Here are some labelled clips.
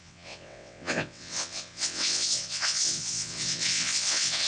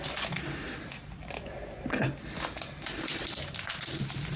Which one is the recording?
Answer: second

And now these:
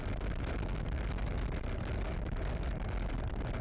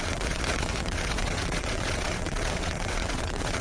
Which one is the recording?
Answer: first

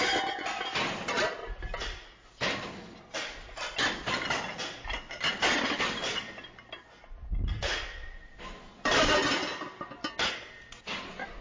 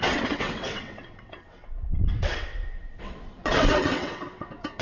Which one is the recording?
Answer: first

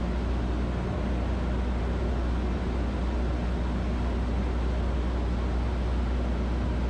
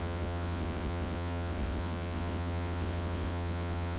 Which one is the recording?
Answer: first